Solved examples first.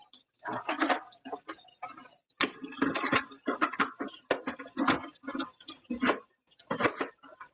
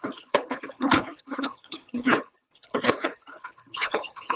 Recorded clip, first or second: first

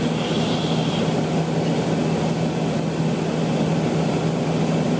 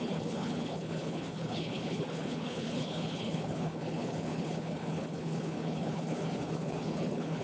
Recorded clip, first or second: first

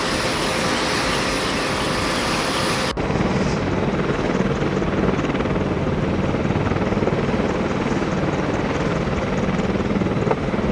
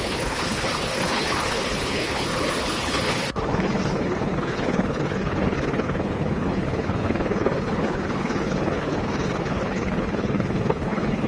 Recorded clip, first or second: first